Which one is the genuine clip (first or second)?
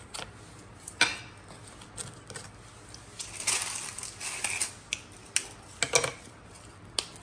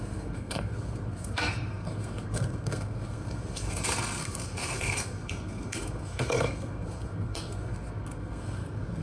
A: first